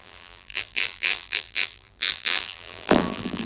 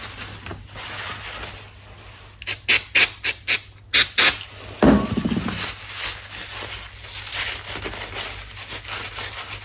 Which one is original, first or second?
second